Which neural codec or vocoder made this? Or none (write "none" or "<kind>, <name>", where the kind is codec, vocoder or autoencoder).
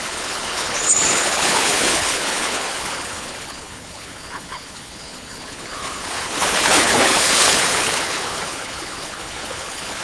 codec, HILCodec